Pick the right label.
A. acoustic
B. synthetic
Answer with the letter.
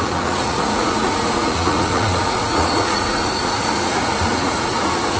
B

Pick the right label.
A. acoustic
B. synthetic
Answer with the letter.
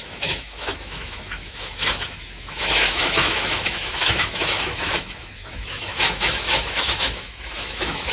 B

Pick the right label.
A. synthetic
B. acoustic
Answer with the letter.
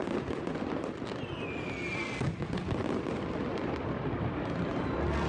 B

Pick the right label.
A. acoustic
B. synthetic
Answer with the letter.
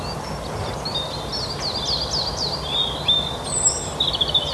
A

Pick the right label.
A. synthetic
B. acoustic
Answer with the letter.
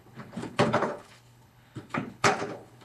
A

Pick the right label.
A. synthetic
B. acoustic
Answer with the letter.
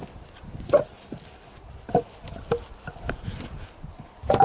B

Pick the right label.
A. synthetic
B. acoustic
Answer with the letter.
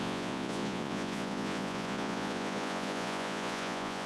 A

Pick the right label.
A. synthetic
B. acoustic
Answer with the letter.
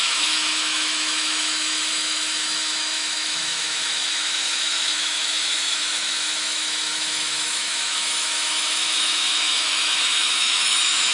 A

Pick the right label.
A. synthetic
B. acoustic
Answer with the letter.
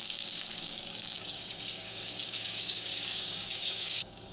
A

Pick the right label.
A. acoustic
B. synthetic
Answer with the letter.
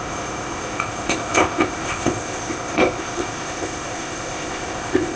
B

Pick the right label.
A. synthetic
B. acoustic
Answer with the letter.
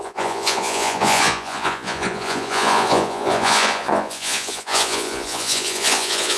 A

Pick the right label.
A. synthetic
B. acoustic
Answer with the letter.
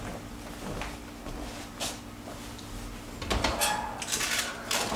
B